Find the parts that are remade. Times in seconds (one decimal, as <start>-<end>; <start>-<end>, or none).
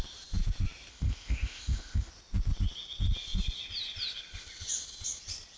0.9-2.1